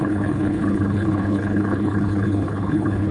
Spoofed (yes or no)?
yes